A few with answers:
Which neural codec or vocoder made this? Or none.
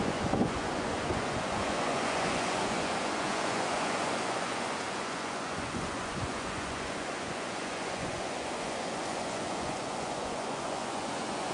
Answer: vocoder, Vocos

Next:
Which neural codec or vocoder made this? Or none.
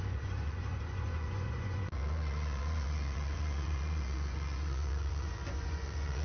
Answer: vocoder, Vocos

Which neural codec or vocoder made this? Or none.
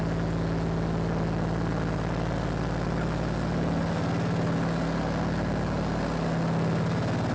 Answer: none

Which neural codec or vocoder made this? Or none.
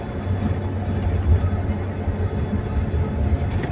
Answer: none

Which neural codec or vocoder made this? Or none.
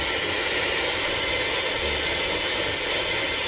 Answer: none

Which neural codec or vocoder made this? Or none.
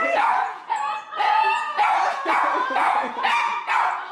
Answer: vocoder, Vocos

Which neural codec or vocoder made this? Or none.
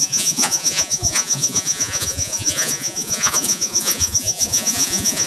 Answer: vocoder, Vocos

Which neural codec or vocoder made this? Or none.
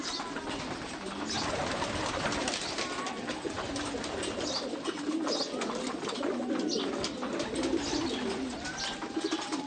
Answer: none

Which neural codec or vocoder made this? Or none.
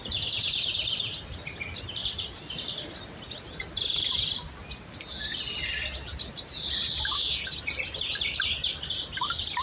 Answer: none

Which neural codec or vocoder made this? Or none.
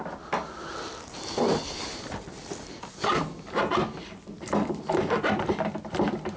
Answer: none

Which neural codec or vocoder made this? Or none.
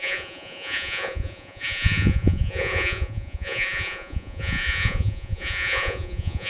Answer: vocoder, Vocos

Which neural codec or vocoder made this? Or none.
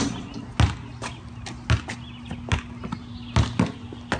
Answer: none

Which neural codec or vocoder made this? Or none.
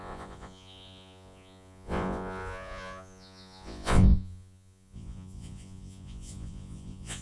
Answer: vocoder, Vocos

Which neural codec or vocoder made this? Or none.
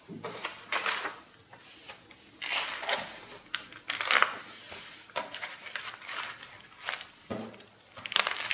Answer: none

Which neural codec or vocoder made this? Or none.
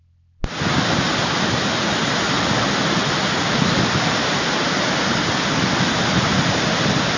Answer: none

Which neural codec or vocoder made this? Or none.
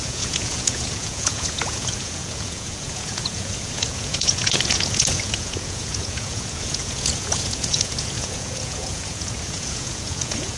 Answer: vocoder, Vocos